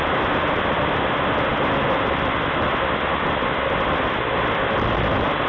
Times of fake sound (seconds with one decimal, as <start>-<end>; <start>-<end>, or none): none